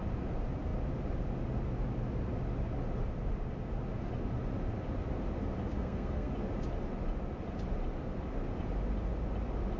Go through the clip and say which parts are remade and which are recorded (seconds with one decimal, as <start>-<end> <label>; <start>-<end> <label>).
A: 0.0-5.7 recorded; 5.7-6.3 remade; 6.3-9.8 recorded

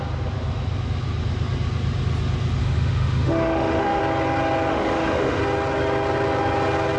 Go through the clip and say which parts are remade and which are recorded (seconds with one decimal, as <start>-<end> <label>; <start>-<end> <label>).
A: 0.0-2.6 recorded; 2.6-4.0 remade; 4.0-4.7 recorded; 4.7-5.4 remade; 5.4-7.0 recorded

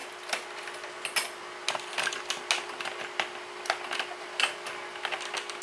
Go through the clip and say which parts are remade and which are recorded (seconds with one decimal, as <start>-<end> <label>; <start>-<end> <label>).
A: 0.0-5.6 recorded

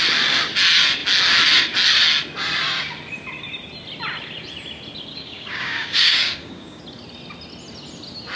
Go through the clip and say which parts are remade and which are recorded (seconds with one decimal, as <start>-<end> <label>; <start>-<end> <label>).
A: 0.0-5.1 recorded; 5.1-6.8 remade; 6.8-8.4 recorded

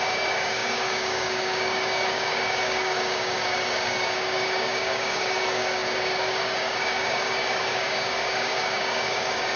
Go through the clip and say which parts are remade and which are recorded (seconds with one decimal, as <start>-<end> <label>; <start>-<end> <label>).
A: 0.0-9.6 remade